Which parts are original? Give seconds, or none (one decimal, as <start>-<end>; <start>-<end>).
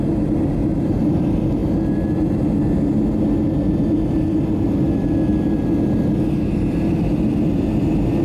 0.0-8.2